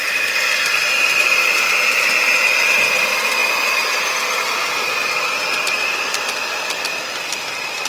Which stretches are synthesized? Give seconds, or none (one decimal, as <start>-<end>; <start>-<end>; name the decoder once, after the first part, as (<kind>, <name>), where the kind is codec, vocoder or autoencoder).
none